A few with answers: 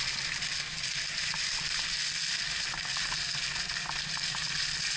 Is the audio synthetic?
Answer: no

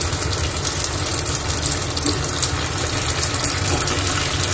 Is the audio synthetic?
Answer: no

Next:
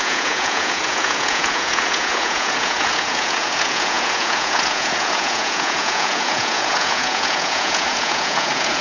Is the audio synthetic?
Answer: yes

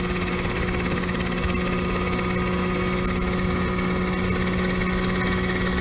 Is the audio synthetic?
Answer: no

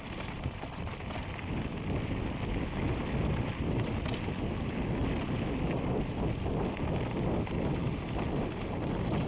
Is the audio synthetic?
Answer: no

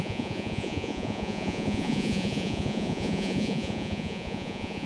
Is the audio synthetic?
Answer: yes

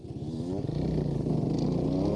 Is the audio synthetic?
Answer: no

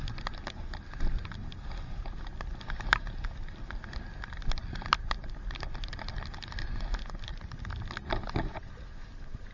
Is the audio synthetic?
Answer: no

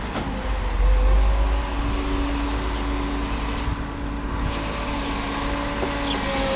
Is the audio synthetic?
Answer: no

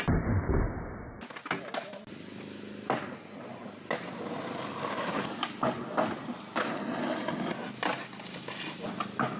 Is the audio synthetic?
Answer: no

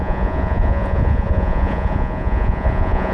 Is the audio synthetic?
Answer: yes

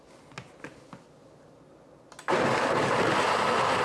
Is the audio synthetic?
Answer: no